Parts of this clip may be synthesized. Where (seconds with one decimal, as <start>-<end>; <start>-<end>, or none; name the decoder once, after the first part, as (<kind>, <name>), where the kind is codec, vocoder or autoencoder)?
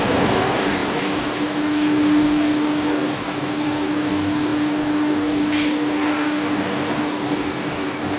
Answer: 0.0-8.2 (codec, DAC)